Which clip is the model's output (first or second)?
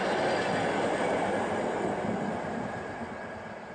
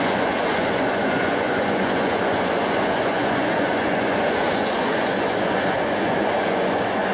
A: second